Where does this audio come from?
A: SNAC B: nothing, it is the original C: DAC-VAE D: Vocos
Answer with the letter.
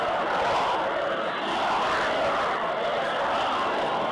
B